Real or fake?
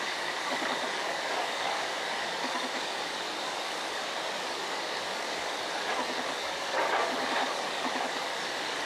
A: fake